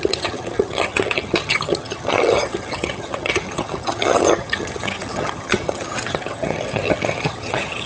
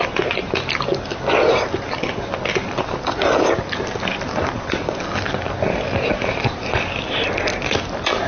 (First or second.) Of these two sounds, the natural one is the second